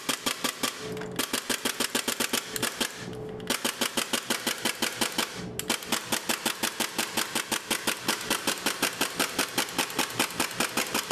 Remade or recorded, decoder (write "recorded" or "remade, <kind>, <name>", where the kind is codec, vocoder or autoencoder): recorded